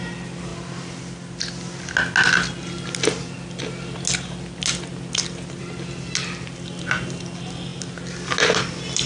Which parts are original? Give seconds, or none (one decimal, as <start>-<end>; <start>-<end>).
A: 0.0-9.1